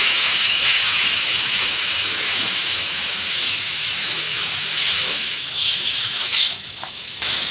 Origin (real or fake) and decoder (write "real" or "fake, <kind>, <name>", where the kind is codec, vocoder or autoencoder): fake, autoencoder, DAC-VAE